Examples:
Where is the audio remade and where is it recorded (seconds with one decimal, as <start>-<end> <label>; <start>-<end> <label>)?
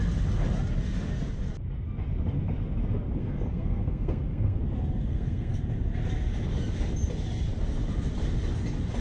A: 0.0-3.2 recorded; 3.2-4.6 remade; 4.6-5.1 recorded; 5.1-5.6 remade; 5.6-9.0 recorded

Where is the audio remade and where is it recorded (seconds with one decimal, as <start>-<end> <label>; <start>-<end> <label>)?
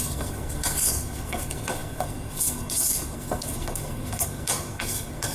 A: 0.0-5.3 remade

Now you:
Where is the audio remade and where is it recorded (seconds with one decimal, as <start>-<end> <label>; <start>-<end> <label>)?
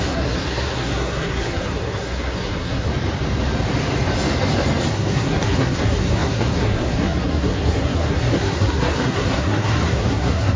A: 0.0-2.9 remade; 2.9-4.9 recorded; 4.9-10.6 remade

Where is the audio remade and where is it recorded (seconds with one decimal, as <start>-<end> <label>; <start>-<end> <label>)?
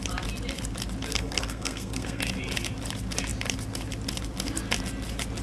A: 0.0-1.1 recorded; 1.1-2.2 remade; 2.2-5.4 recorded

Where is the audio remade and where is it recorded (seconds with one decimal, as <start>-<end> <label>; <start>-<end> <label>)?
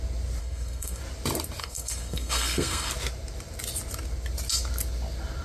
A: 0.0-0.4 recorded; 0.4-1.0 remade; 1.0-1.6 recorded; 1.6-2.9 remade; 2.9-5.4 recorded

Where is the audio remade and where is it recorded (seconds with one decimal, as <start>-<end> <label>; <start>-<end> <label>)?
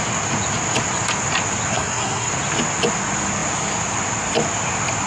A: 0.0-1.7 recorded; 1.7-2.3 remade; 2.3-5.1 recorded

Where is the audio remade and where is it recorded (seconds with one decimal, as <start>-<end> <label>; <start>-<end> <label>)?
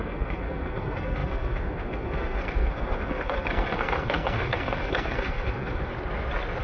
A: 0.0-5.9 remade; 5.9-6.6 recorded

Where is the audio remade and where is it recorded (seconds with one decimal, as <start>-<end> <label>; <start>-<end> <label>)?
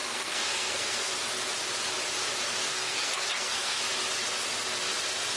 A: 0.0-1.1 remade; 1.1-2.6 recorded; 2.6-3.8 remade; 3.8-5.4 recorded